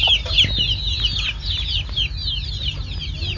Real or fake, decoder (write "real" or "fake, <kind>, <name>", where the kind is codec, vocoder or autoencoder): real